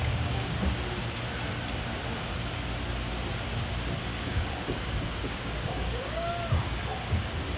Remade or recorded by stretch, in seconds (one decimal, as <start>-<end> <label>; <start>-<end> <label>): 0.0-0.7 remade; 0.7-4.1 recorded; 4.1-6.3 remade; 6.3-7.6 recorded